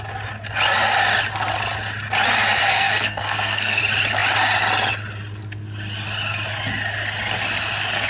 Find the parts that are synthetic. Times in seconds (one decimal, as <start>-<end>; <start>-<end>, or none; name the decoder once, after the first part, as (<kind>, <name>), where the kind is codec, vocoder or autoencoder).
2.6-3.8 (codec, SNAC)